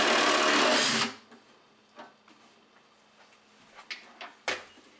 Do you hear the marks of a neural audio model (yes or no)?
no